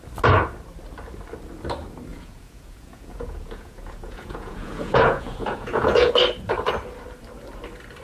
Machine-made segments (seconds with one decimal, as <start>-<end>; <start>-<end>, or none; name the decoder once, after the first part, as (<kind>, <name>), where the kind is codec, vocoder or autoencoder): 2.1-6.1 (vocoder, Vocos)